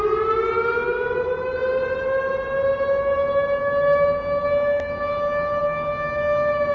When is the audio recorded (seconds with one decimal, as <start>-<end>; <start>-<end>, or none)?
0.0-6.7

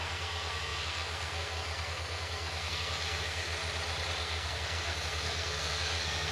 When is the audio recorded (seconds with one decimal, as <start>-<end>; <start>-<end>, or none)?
3.6-4.2

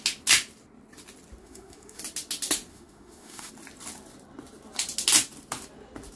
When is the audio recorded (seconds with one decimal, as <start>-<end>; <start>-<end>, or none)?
0.0-1.4; 2.0-2.7; 3.5-6.2

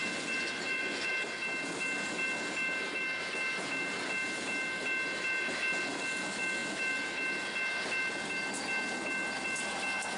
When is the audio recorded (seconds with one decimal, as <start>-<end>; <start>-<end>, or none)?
1.1-10.2

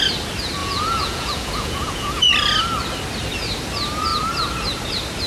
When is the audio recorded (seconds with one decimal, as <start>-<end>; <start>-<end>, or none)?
0.0-0.6; 2.3-5.3

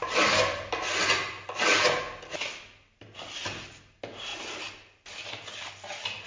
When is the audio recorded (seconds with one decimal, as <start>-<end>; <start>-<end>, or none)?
0.0-6.3

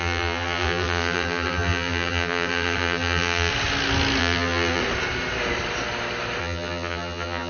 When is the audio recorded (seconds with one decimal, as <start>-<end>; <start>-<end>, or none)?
3.5-4.2; 4.8-6.4

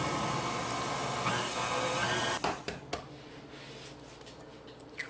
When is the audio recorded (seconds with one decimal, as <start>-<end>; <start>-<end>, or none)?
0.0-5.1